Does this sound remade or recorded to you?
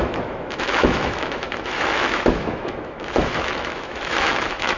remade